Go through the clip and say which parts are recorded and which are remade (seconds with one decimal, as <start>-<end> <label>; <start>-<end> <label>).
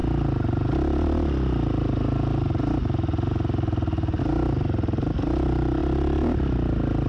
0.0-7.1 recorded